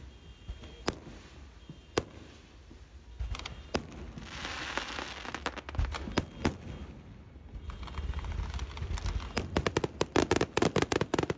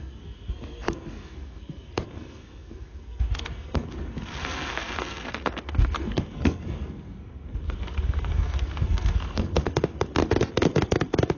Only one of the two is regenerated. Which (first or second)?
second